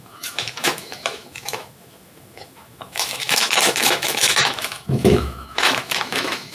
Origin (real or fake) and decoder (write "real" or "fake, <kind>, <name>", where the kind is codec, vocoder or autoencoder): fake, autoencoder, DAC-VAE